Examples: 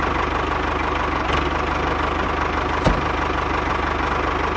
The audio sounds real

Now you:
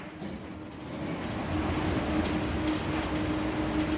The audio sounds real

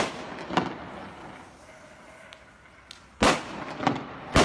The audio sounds real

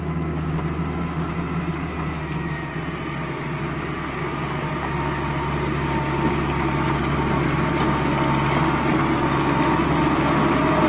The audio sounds real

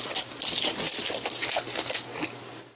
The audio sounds real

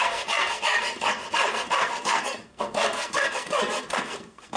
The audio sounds fake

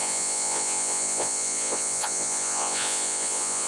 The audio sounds fake